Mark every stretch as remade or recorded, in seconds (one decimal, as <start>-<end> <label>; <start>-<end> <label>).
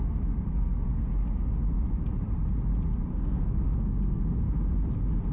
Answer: 0.0-0.5 recorded; 0.5-1.1 remade; 1.1-3.1 recorded; 3.1-4.3 remade; 4.3-5.3 recorded